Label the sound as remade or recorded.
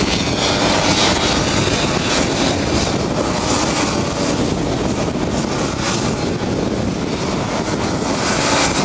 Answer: recorded